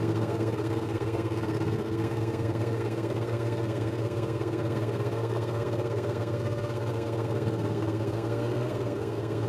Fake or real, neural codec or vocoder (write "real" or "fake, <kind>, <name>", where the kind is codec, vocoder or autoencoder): fake, codec, SNAC